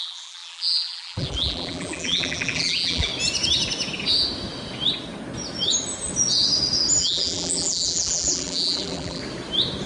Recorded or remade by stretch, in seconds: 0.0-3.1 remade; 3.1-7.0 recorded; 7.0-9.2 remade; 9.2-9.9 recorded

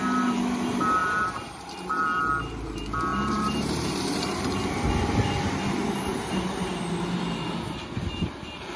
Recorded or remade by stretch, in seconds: 0.0-1.0 recorded; 1.0-2.3 remade; 2.3-3.1 recorded; 3.1-4.7 remade; 4.7-6.1 recorded; 6.1-6.7 remade; 6.7-8.8 recorded